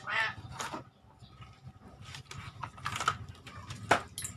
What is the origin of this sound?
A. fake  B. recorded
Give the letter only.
B